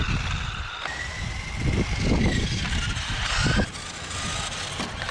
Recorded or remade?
recorded